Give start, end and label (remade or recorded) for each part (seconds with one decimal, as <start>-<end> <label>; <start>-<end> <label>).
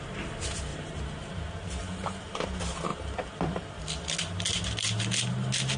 0.0-0.7 recorded; 0.7-1.4 remade; 1.4-1.8 recorded; 1.8-2.4 remade; 2.4-2.9 recorded; 2.9-3.8 remade; 3.8-5.8 recorded